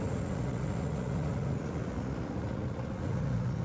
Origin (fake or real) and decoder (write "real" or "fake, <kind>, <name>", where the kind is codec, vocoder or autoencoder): fake, vocoder, Vocos